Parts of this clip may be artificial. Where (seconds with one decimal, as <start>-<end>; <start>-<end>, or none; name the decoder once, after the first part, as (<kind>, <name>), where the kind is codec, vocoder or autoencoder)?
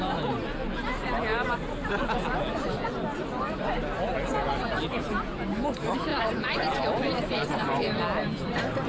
6.1-8.0 (vocoder, BigVGAN v2)